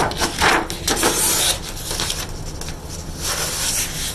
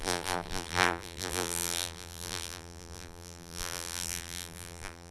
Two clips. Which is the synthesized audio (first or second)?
second